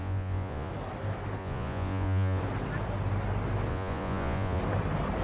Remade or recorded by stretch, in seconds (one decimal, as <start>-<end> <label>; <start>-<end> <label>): 0.0-0.7 remade; 0.7-1.4 recorded; 1.4-2.4 remade; 2.4-3.7 recorded; 3.7-4.6 remade; 4.6-5.2 recorded